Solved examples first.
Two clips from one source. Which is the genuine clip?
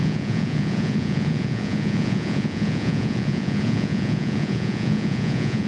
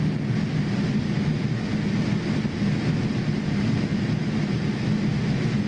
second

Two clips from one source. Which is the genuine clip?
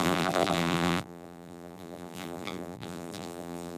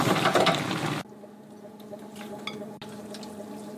second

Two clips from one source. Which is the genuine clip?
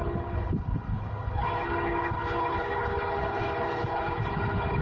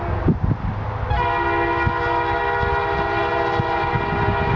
second